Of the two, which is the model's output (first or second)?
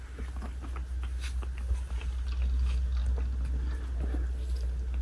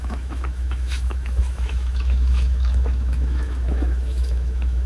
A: second